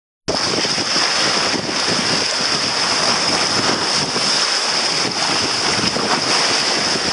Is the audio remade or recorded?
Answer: recorded